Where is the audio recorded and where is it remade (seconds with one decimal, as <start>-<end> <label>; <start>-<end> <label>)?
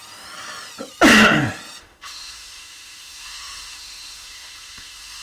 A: 0.0-1.8 recorded; 1.8-5.2 remade